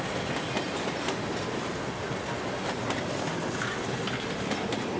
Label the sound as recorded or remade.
recorded